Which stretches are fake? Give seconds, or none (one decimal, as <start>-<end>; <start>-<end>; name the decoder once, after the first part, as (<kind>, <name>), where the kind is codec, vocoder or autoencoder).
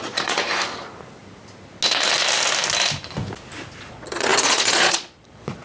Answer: 0.0-0.4 (vocoder, Vocos); 3.8-5.6